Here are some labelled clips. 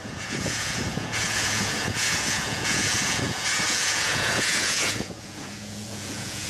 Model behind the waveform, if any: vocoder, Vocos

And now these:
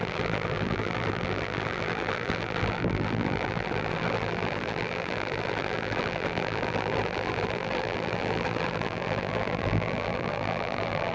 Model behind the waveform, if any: vocoder, BigVGAN v2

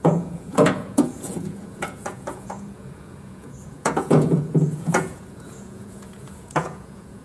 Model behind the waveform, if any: vocoder, Vocos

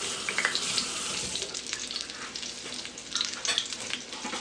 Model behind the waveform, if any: none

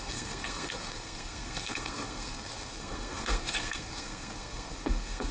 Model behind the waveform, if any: codec, SNAC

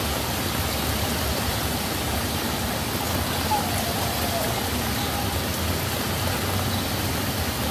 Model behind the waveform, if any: none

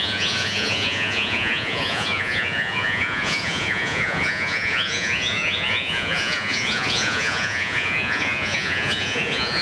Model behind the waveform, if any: vocoder, Vocos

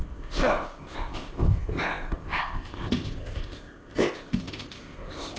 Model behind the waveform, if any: codec, ZipCodec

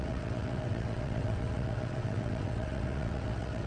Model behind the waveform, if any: vocoder, WaveNeXt